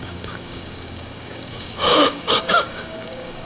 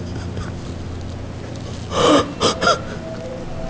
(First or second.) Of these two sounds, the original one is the second